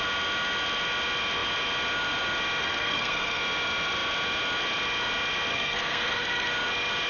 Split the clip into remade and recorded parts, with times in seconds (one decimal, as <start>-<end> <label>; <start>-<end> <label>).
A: 0.0-2.6 recorded; 2.6-3.4 remade; 3.4-5.5 recorded; 5.5-6.5 remade; 6.5-7.1 recorded

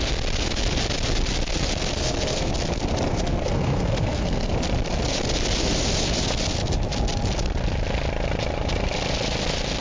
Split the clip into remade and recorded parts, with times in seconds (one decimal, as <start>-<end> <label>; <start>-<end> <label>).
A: 0.0-2.0 recorded; 2.0-2.5 remade; 2.5-3.1 recorded; 3.1-4.5 remade; 4.5-9.8 recorded

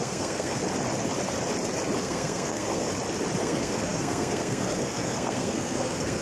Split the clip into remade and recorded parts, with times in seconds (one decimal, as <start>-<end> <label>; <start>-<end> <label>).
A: 0.0-0.6 remade; 0.6-2.0 recorded; 2.0-2.9 remade; 2.9-3.4 recorded; 3.4-6.2 remade